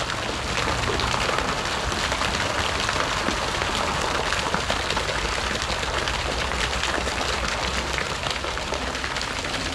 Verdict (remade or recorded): recorded